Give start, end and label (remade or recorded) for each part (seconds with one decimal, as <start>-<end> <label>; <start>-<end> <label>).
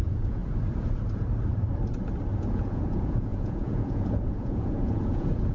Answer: 0.0-0.4 remade; 0.4-2.4 recorded; 2.4-5.5 remade